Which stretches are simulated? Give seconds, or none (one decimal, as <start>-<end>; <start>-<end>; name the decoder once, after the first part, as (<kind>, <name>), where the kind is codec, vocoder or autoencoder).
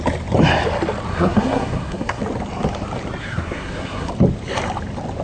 1.1-2.2 (codec, SNAC); 3.2-4.1